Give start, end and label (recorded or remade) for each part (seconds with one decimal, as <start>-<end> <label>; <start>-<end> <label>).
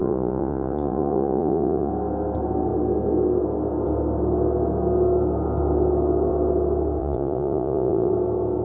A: 0.0-1.9 remade; 1.9-7.0 recorded; 7.0-8.1 remade; 8.1-8.6 recorded